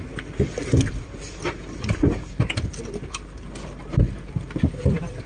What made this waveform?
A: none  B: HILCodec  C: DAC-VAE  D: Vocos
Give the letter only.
A